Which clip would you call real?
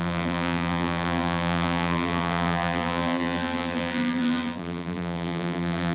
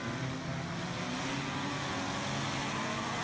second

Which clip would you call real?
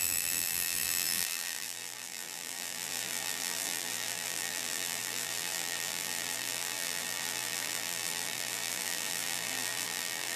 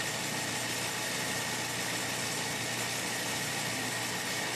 second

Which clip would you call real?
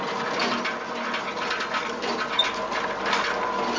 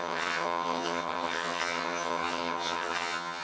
first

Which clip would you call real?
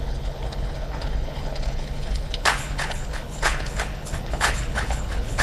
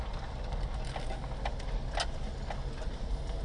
second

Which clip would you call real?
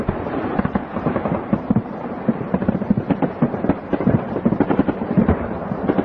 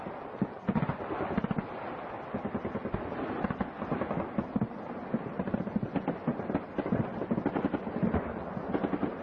second